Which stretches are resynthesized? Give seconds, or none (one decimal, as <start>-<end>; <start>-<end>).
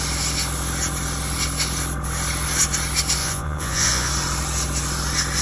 3.2-4.1